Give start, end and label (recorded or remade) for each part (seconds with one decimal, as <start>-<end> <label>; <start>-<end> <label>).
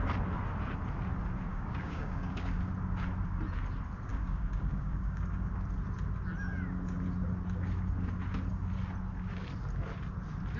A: 0.0-1.5 recorded; 1.5-2.6 remade; 2.6-4.1 recorded; 4.1-5.5 remade; 5.5-10.6 recorded